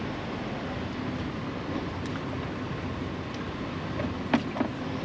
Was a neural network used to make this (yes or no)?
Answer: no